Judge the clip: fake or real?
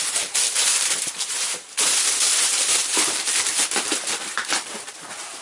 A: fake